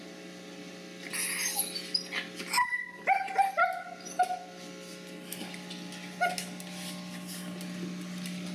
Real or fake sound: real